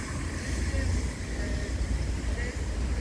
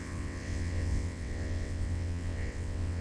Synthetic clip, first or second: second